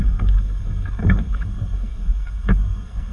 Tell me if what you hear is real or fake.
fake